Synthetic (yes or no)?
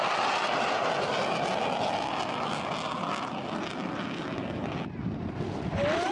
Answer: no